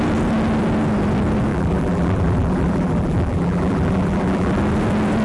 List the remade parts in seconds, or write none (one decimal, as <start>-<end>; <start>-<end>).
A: 1.5-4.6

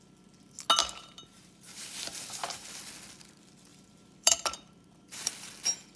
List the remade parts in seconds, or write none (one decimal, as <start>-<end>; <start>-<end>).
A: 0.8-2.8; 3.7-5.3

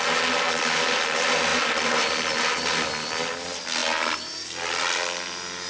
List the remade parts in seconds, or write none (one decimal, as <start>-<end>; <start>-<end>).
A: none